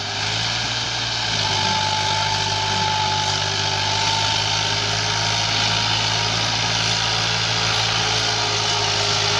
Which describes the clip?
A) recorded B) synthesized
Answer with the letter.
A